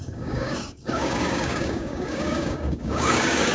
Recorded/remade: remade